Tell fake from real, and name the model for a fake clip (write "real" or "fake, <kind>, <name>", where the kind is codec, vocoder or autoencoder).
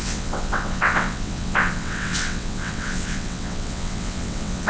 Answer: fake, vocoder, WaveNeXt